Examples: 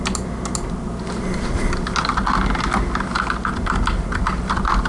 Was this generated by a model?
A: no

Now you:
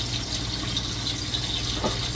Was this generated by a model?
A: no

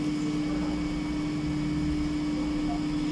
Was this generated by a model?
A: no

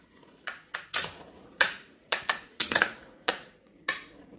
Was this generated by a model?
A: yes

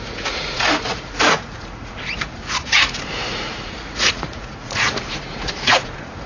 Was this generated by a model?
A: yes